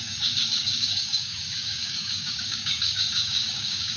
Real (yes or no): no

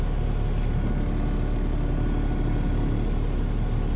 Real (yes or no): yes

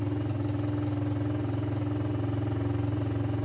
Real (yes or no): yes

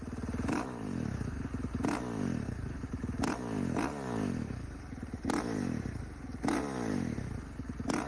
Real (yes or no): yes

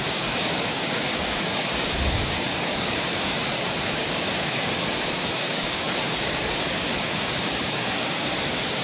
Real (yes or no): no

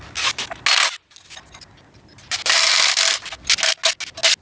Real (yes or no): yes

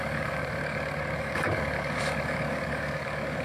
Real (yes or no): no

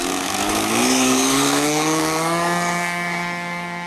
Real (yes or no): no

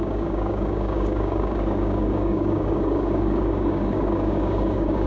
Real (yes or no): no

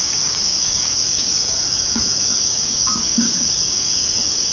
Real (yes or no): no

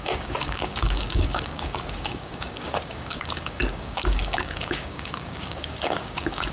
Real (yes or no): no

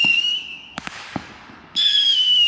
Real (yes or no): no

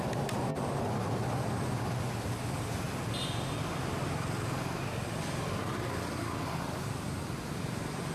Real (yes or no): yes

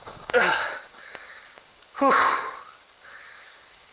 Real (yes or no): no